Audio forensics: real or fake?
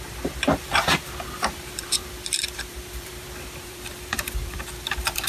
fake